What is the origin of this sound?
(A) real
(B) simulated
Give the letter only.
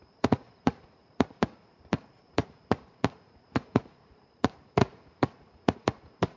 B